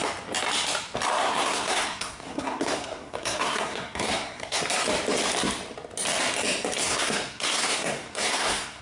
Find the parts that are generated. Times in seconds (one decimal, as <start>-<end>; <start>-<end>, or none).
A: 1.2-4.6; 6.8-8.8